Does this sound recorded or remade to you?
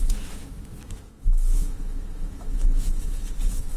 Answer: remade